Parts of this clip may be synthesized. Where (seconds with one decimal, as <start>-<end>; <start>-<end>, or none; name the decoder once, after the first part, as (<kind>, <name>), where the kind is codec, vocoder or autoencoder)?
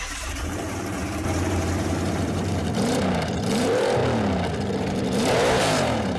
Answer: 0.0-4.0 (vocoder, BigVGAN v2); 4.8-6.2